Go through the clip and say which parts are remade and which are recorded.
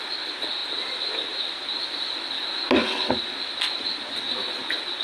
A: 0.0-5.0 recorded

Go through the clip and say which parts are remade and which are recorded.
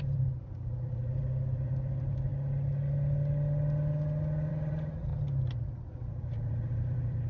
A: 0.0-2.3 remade; 2.3-4.5 recorded; 4.5-5.1 remade; 5.1-6.1 recorded; 6.1-7.3 remade